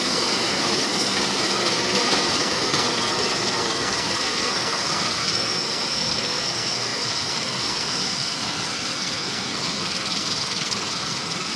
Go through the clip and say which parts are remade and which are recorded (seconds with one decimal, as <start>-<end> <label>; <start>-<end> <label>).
0.0-11.6 remade